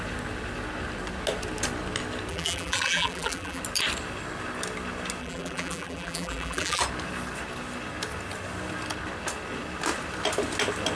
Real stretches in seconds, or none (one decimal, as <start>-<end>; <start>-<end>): 0.0-2.3; 3.6-5.2; 6.8-11.0